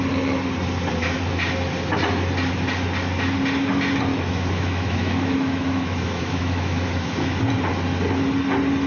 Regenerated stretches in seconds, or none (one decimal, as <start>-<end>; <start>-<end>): 4.1-7.4